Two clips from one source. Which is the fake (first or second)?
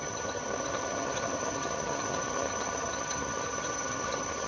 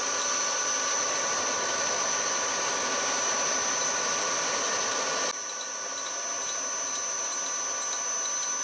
first